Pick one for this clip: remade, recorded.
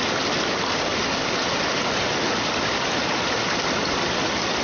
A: recorded